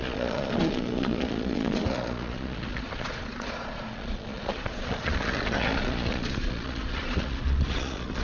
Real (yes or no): no